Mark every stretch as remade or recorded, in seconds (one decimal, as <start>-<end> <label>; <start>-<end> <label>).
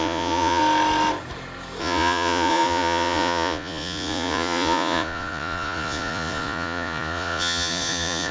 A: 0.0-0.6 remade; 0.6-1.8 recorded; 1.8-8.3 remade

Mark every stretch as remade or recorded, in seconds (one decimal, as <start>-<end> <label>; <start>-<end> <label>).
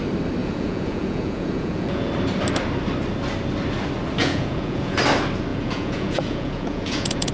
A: 0.0-0.4 recorded; 0.4-2.1 remade; 2.1-4.2 recorded; 4.2-5.0 remade; 5.0-5.5 recorded; 5.5-7.3 remade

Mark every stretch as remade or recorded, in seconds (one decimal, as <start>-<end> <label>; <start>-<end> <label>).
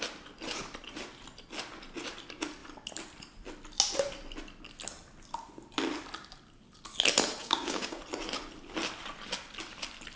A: 0.0-7.4 recorded; 7.4-8.0 remade; 8.0-10.2 recorded